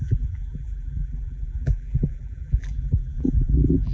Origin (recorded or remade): remade